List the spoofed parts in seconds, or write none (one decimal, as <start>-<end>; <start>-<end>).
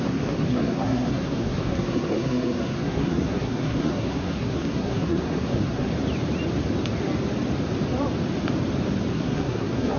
0.0-5.9; 9.1-10.0